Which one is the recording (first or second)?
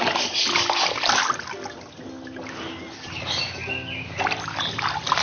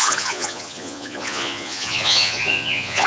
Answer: first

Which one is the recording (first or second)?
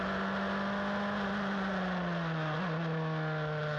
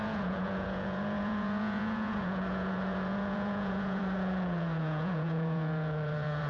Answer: first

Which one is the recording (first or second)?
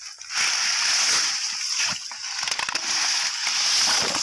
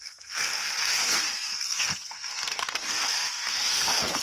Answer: first